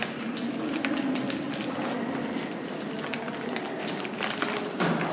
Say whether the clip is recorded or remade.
recorded